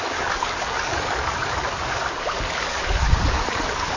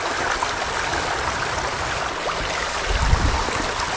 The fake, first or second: first